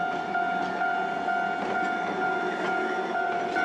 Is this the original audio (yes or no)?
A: yes